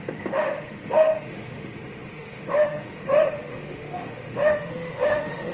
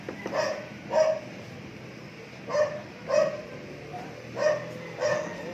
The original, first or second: second